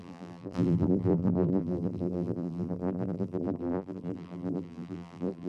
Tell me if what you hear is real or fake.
fake